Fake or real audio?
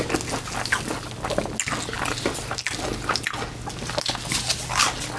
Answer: real